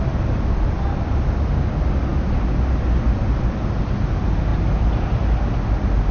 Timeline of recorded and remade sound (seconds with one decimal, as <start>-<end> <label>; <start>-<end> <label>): 0.0-6.1 recorded